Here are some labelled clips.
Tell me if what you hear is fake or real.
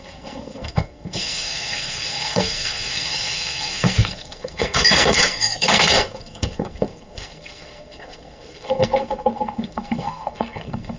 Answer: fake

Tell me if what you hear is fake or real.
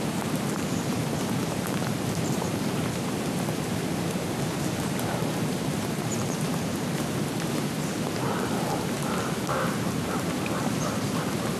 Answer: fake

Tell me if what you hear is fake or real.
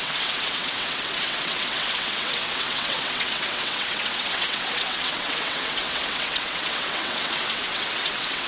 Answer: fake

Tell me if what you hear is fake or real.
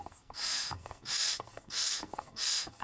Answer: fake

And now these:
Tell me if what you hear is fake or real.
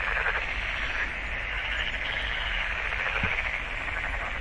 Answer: real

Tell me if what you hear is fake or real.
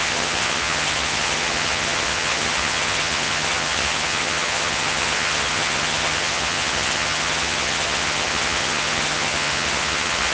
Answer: fake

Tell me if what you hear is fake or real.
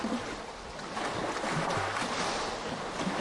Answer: real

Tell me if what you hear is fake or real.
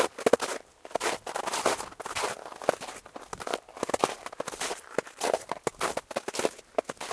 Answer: real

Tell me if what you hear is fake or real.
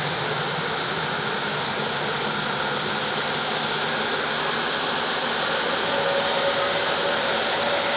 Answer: real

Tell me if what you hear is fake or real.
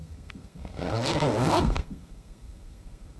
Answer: fake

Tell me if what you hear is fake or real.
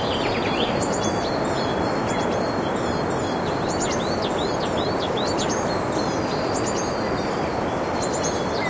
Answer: real